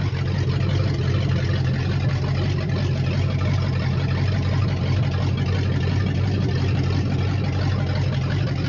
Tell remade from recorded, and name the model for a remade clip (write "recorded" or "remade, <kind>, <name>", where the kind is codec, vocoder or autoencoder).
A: recorded